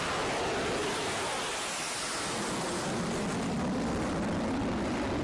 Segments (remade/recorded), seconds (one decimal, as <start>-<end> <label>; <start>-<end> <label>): 0.0-5.2 recorded